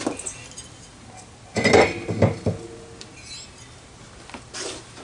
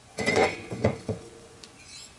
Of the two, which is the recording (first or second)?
first